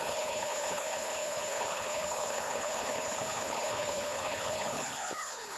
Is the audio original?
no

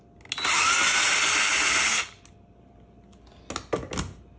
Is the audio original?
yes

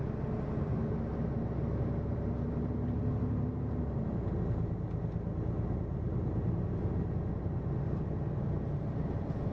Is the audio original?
yes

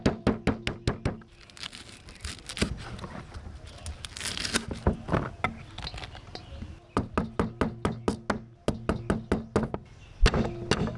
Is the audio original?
yes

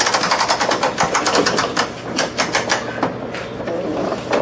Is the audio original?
yes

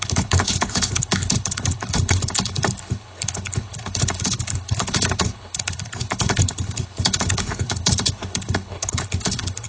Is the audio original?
no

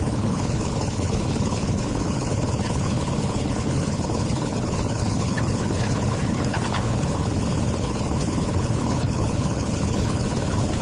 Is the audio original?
no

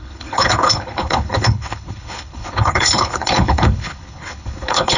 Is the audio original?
no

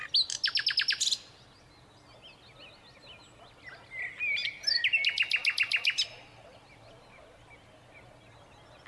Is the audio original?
yes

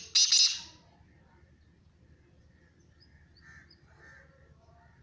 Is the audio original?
yes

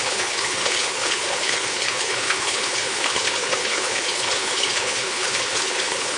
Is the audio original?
no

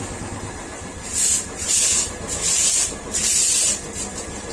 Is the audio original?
yes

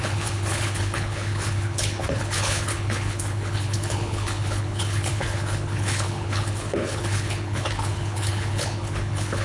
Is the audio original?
no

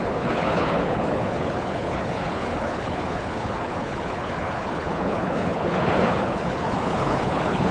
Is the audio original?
no